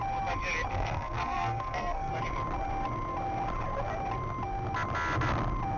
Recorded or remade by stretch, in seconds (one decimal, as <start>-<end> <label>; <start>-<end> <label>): 0.0-0.7 recorded; 0.7-2.1 remade; 2.1-5.8 recorded